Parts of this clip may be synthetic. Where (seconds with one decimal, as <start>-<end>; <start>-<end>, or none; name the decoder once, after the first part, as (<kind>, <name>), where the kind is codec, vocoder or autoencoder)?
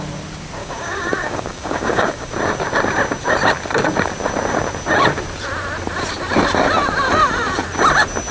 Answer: 0.6-2.3 (codec, DAC)